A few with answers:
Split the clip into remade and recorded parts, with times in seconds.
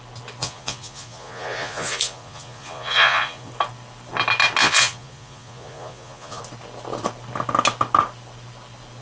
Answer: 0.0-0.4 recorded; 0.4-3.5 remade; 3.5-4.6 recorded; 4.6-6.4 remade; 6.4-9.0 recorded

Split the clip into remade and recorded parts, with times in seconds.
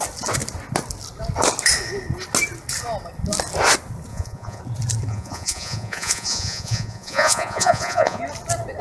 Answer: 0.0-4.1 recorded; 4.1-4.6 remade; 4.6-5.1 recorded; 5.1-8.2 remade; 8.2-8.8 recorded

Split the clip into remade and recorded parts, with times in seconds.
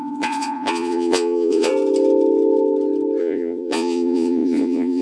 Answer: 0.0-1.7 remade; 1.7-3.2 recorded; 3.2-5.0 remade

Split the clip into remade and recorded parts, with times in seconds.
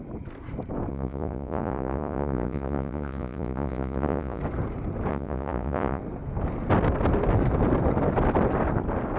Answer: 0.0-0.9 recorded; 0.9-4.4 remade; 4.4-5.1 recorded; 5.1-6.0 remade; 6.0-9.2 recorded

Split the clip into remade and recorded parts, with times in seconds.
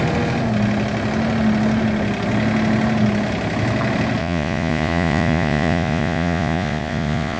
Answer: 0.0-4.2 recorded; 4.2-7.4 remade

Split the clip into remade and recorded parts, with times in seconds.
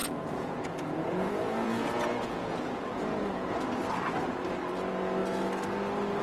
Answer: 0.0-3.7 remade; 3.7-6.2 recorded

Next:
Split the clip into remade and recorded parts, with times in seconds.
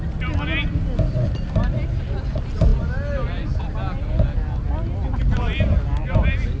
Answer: 0.0-6.6 recorded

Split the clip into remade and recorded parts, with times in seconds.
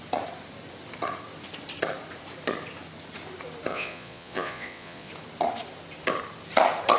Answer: 0.0-3.7 recorded; 3.7-5.1 remade; 5.1-7.0 recorded